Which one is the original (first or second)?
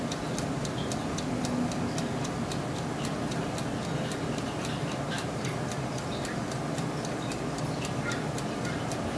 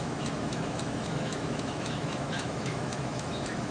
first